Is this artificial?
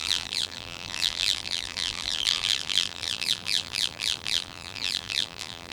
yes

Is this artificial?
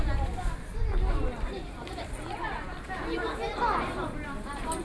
no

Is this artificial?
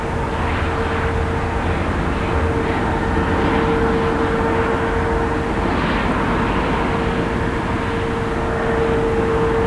no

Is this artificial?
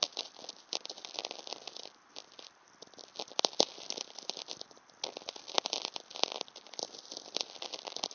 no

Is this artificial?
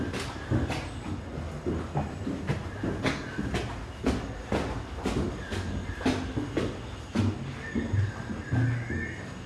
no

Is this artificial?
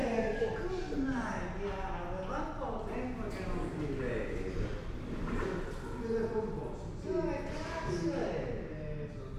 no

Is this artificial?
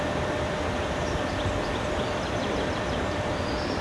yes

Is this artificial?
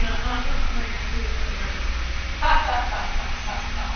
no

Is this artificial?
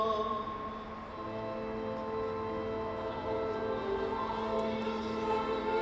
no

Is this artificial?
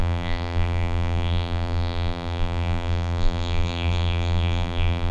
yes